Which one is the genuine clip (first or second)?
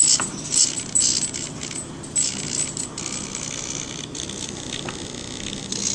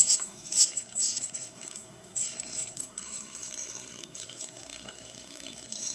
first